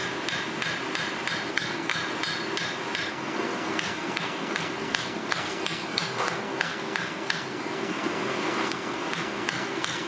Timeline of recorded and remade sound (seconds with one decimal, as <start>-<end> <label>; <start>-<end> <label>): 0.0-1.5 recorded; 1.5-1.9 remade; 1.9-3.1 recorded; 3.1-10.1 remade